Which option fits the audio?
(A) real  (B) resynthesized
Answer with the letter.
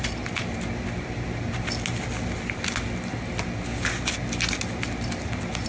A